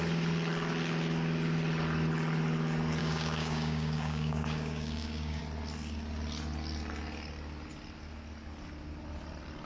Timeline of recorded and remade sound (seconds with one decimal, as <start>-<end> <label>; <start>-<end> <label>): 0.0-3.0 recorded; 3.0-5.4 remade; 5.4-9.6 recorded